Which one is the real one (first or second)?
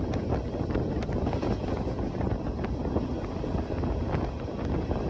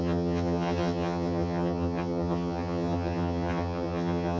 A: first